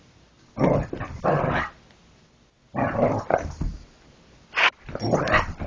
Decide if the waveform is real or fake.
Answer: fake